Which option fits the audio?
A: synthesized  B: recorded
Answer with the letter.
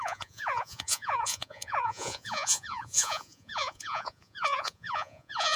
A